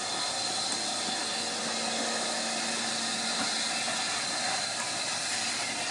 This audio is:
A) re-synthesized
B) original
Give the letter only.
B